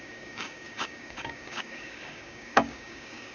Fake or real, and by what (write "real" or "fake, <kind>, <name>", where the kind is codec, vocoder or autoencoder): fake, codec, DAC